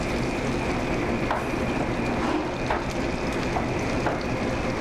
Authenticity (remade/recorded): recorded